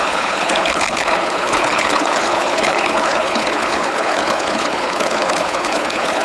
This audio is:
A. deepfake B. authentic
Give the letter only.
A